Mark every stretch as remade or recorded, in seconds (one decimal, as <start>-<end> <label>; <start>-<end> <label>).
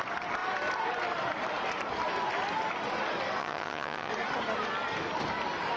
0.0-3.4 recorded; 3.4-4.1 remade; 4.1-5.8 recorded